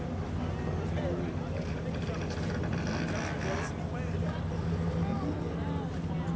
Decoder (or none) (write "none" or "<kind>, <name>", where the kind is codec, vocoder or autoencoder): none